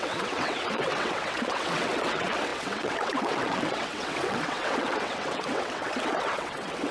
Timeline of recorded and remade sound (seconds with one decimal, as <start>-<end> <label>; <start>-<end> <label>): 0.0-6.9 remade